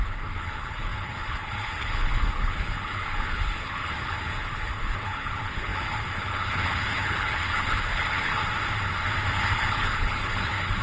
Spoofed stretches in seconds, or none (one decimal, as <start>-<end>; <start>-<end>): 0.0-8.4; 9.3-10.8